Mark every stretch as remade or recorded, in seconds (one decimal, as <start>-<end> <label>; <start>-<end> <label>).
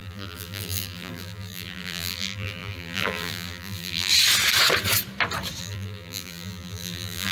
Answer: 0.0-4.1 remade; 4.1-5.6 recorded; 5.6-7.3 remade